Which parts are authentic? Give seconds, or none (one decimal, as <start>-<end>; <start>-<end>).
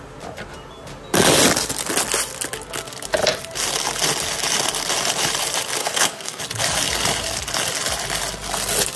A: 0.0-5.8; 6.4-9.0